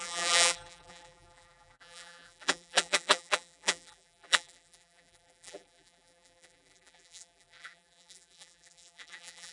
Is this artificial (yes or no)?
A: yes